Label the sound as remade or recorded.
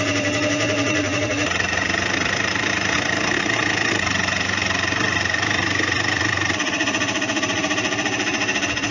remade